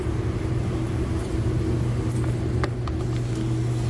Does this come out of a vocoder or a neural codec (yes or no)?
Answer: no